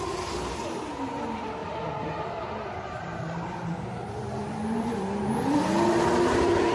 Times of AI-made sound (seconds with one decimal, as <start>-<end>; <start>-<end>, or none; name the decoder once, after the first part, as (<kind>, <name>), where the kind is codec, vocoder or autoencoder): 1.6-5.6 (vocoder, BigVGAN v2)